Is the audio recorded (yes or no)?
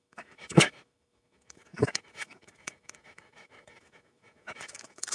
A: no